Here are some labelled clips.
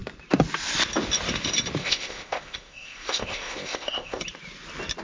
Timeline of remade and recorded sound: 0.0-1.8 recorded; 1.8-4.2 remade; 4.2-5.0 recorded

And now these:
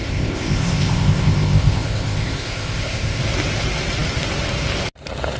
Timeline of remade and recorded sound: 0.0-3.2 remade; 3.2-5.4 recorded

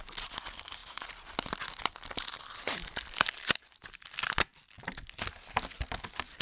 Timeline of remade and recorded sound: 0.0-6.4 recorded

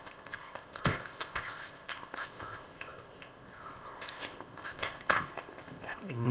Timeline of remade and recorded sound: 0.0-6.3 remade

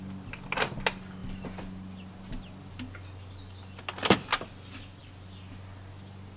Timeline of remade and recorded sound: 0.0-6.4 recorded

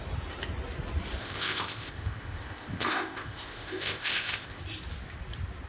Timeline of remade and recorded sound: 0.0-1.2 recorded; 1.2-4.6 remade; 4.6-5.7 recorded